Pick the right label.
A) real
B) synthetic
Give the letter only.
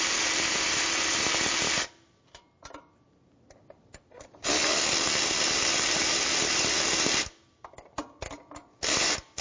A